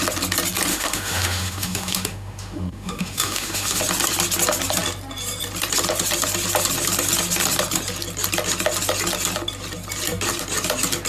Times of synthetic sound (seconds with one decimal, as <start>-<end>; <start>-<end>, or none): 0.7-3.8